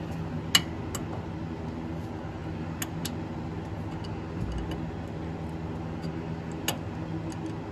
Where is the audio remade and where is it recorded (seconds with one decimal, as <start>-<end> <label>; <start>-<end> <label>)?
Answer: 0.0-7.7 recorded